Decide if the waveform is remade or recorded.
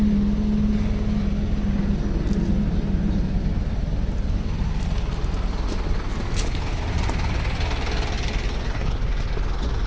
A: recorded